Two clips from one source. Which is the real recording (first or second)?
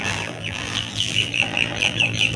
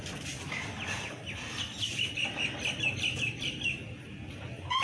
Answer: second